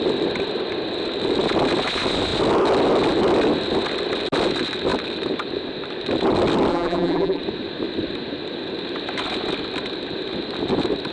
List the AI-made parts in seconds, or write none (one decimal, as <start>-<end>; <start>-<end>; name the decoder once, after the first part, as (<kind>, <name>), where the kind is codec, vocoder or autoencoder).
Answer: 6.7-7.4 (vocoder, BigVGAN v2)